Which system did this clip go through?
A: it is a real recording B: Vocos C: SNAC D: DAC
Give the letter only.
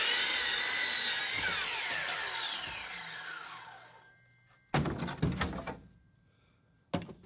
A